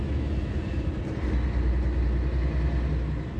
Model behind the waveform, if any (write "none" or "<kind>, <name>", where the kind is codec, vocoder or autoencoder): none